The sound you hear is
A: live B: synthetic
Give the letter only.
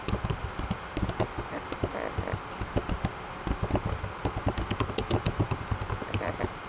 A